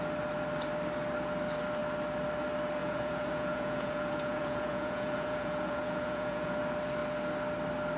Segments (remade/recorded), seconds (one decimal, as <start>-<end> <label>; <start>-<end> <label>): 0.0-2.8 recorded; 2.8-6.6 remade; 6.6-8.0 recorded